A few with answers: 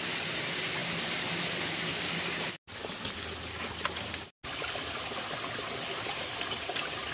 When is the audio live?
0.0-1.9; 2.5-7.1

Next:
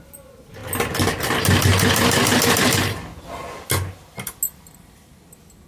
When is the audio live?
0.0-5.7